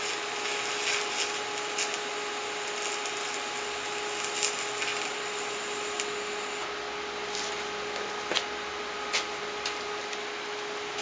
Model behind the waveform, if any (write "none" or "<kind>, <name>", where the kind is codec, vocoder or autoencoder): none